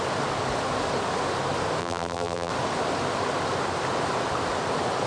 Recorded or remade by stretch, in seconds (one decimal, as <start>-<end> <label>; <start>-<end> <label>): 0.0-1.8 recorded; 1.8-2.5 remade; 2.5-5.1 recorded